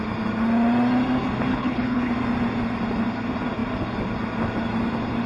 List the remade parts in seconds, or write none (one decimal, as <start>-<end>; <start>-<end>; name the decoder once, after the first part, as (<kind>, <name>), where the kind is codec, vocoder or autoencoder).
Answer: 1.5-2.1 (codec, HILCodec)